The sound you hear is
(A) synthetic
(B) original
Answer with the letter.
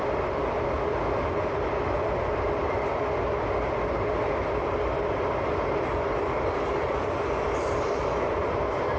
A